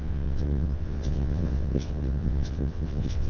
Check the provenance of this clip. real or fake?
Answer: fake